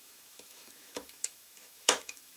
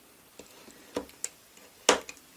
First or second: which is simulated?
first